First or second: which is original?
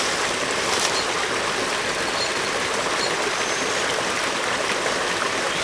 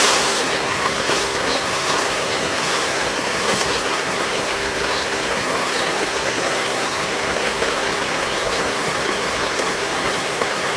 first